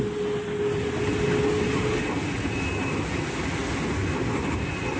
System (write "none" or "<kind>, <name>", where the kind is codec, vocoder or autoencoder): none